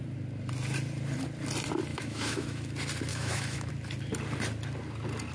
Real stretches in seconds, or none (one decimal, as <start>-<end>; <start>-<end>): 0.0-1.9; 2.7-3.1; 3.7-5.3